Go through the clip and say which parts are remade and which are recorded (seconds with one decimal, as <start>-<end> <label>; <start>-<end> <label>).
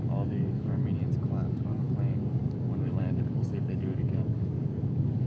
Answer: 0.0-0.8 remade; 0.8-1.5 recorded; 1.5-5.3 remade